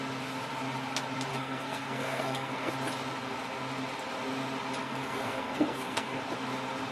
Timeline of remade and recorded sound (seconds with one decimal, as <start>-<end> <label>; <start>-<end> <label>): 0.0-1.3 recorded; 1.3-2.7 remade; 2.7-4.8 recorded; 4.8-6.2 remade; 6.2-6.9 recorded